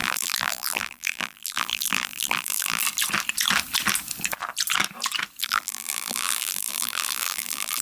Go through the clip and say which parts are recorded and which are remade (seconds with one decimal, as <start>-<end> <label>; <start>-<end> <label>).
0.0-2.8 remade; 2.8-5.4 recorded; 5.4-7.8 remade